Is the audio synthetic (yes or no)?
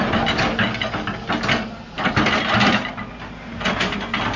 no